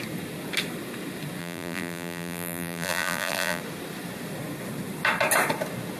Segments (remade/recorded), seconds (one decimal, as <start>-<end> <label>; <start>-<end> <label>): 0.0-1.4 recorded; 1.4-3.6 remade; 3.6-6.0 recorded